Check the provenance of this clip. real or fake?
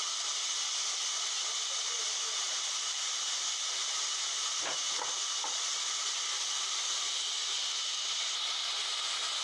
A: real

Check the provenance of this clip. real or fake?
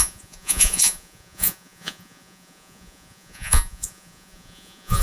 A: fake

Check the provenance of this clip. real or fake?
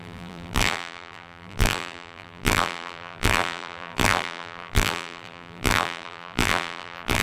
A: fake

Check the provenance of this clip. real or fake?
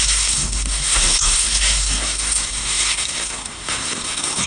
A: fake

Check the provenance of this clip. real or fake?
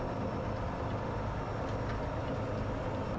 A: real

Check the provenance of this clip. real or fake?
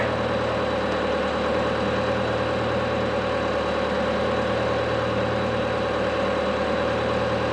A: real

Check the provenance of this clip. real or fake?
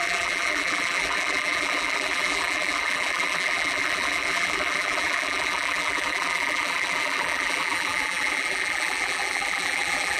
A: fake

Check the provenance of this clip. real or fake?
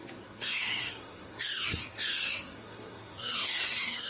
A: fake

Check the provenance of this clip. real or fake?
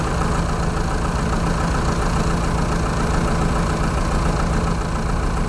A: real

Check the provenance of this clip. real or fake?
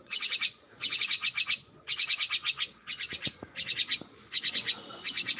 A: fake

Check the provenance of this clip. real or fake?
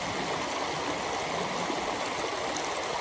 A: real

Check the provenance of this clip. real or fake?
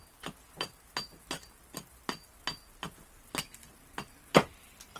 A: real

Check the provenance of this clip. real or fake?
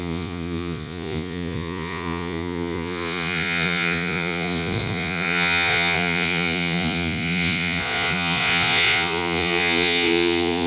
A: fake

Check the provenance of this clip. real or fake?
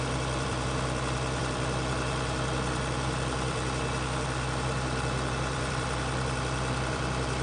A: fake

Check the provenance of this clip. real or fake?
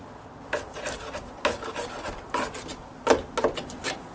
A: real